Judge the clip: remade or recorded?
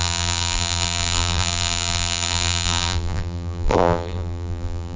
remade